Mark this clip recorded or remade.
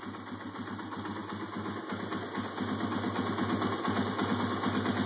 recorded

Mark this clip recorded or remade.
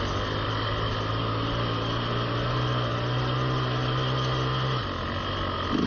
recorded